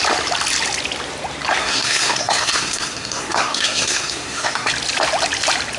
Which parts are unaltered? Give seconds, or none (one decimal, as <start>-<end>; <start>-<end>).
0.0-1.6; 4.7-5.8